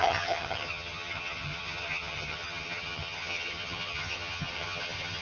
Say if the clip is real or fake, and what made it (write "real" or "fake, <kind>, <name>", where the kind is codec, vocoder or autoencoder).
fake, vocoder, HiFi-GAN